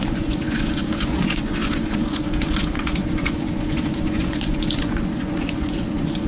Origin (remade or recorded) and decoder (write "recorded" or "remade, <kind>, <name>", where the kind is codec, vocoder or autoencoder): remade, vocoder, Vocos